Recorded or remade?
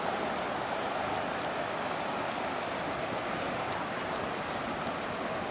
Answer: recorded